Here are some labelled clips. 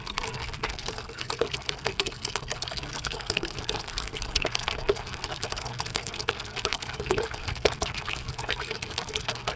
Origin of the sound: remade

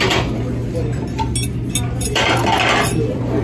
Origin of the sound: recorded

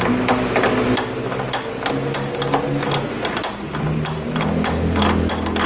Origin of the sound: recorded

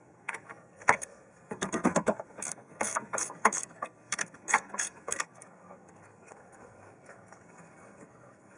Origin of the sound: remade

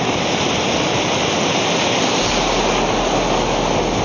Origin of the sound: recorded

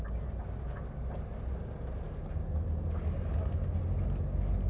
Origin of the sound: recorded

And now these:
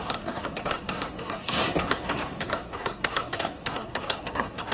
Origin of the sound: remade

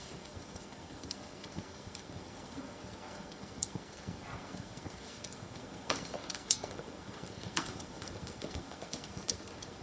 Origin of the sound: remade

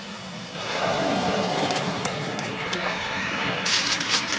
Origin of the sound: remade